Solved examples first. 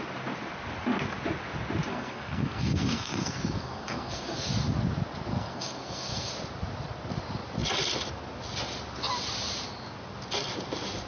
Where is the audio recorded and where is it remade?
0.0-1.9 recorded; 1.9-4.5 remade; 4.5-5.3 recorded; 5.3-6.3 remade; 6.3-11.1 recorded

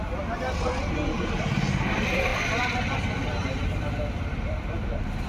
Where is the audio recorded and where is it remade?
0.0-5.3 recorded